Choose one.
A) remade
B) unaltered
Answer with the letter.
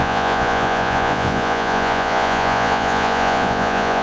A